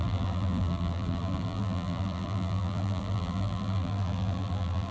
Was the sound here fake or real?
fake